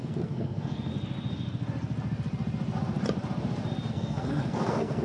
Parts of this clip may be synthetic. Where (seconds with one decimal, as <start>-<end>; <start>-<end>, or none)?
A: 0.0-0.9; 3.9-5.0